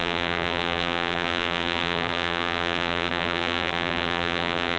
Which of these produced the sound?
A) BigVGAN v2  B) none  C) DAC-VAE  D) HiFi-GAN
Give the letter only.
A